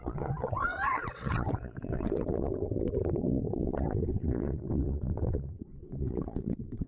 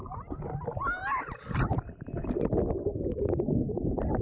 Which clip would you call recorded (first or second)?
second